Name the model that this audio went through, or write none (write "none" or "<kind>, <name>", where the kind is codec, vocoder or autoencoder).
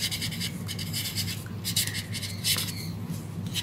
none